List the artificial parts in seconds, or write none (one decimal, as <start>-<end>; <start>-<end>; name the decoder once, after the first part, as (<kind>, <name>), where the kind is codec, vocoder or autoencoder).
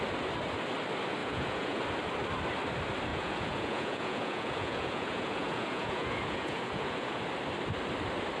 1.2-1.8 (vocoder, Vocos); 3.1-7.2